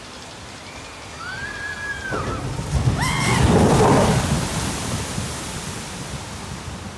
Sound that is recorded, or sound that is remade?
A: recorded